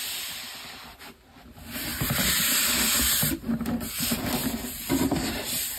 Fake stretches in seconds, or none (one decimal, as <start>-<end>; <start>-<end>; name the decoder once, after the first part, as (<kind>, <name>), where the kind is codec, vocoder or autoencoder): 0.0-0.6 (vocoder, BigVGAN v2); 1.9-3.2